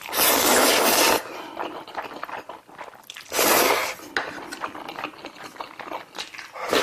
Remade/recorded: recorded